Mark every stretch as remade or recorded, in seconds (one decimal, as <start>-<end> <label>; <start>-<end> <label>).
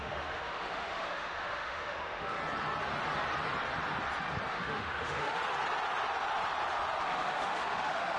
0.0-2.4 remade; 2.4-4.5 recorded; 4.5-5.4 remade; 5.4-7.0 recorded; 7.0-8.2 remade